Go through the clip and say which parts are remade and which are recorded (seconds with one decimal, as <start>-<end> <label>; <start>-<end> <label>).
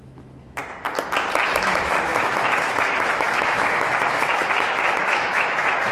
0.0-0.6 remade; 0.6-1.6 recorded; 1.6-5.9 remade